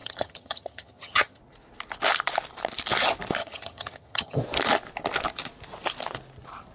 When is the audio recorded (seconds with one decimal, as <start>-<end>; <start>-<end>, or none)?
1.4-3.4; 4.4-6.7